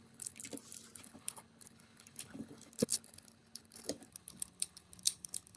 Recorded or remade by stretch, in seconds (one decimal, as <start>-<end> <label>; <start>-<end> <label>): 0.0-0.4 remade; 0.4-1.0 recorded; 1.0-5.6 remade